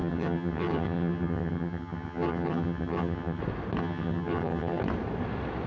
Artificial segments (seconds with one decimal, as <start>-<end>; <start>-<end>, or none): 0.0-3.4; 3.8-4.8